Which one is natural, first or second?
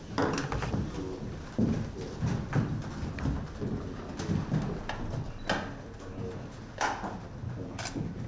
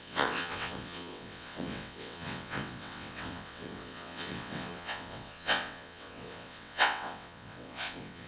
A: first